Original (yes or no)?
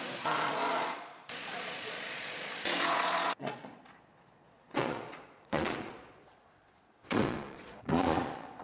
no